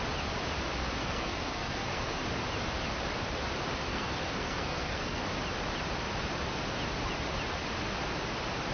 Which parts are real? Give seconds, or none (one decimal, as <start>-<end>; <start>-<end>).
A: 0.0-1.0; 2.2-3.9; 5.2-8.7